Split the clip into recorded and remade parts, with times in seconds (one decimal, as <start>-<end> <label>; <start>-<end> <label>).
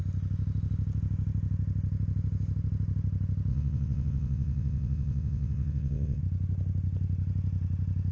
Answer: 0.0-3.5 recorded; 3.5-6.2 remade; 6.2-8.1 recorded